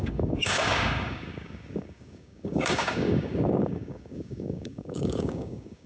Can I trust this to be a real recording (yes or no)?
no